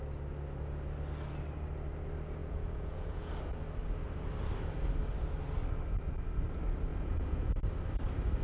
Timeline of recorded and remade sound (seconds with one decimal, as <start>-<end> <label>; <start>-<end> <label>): 0.0-2.4 recorded; 2.4-3.3 remade; 3.3-6.9 recorded; 6.9-7.5 remade; 7.5-8.4 recorded

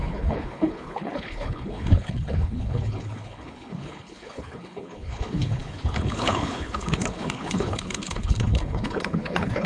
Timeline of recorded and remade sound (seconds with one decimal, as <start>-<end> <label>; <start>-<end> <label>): 0.0-9.7 remade

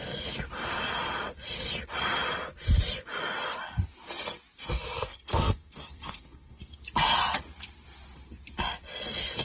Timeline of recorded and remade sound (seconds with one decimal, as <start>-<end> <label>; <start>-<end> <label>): 0.0-5.1 recorded; 5.1-6.8 remade; 6.8-9.4 recorded

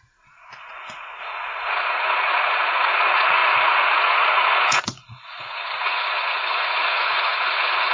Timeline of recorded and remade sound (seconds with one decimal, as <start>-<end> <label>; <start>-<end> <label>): 0.0-7.9 remade